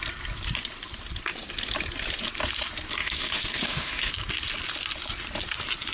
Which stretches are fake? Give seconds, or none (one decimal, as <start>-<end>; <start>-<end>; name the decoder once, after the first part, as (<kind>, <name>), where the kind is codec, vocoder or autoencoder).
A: 3.0-4.1 (autoencoder, DAC-VAE)